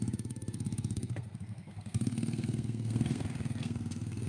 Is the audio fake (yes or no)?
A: yes